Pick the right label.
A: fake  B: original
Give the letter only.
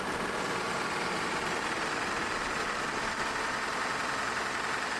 B